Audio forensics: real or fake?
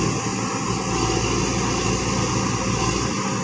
real